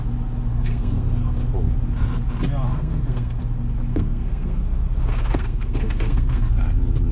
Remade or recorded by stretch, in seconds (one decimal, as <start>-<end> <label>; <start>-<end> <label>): 0.0-0.5 recorded; 0.5-1.4 remade; 1.4-2.7 recorded; 2.7-3.4 remade; 3.4-3.9 recorded; 3.9-6.4 remade; 6.4-7.1 recorded